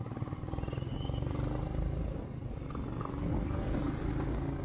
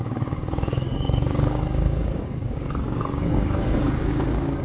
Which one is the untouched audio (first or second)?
first